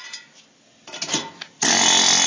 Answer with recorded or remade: recorded